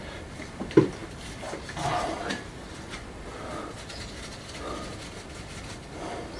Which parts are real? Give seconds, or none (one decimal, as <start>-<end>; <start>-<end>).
0.0-6.4